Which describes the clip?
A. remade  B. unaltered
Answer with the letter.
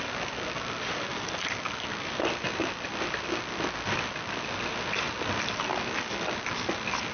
B